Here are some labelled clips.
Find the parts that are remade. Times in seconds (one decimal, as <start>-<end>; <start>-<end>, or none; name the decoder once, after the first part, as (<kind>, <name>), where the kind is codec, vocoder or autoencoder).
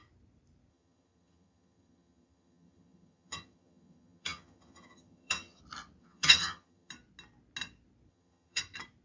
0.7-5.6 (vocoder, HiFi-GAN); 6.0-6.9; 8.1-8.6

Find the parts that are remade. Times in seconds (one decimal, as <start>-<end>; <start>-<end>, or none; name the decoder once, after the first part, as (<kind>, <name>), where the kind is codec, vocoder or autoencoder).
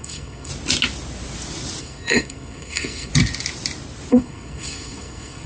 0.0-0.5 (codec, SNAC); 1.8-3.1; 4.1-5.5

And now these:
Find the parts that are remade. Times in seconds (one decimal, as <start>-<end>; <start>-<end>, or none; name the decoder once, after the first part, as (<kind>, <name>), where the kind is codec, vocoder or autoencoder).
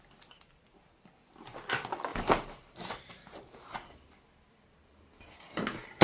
2.1-3.4 (vocoder, BigVGAN v2)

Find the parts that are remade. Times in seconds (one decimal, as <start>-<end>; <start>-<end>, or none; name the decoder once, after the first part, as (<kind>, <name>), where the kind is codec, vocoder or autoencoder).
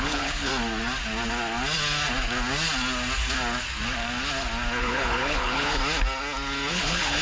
0.0-0.5 (codec, HILCodec); 4.8-5.8; 6.7-7.2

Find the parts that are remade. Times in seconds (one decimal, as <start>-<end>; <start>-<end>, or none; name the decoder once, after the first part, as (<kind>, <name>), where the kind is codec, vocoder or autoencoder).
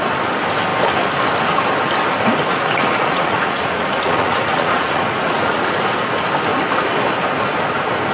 2.5-5.8 (vocoder, Vocos)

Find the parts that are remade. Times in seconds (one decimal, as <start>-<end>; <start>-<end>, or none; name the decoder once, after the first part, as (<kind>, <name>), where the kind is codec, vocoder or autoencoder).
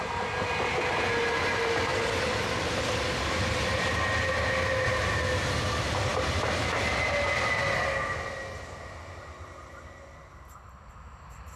none